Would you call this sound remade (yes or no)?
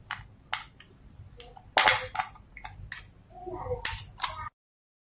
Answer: no